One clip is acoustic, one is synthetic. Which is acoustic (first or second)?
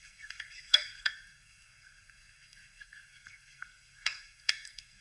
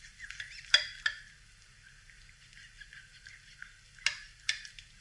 second